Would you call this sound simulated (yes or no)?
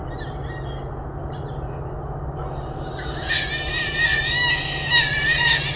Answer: no